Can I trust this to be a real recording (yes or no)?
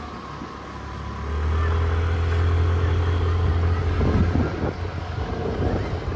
yes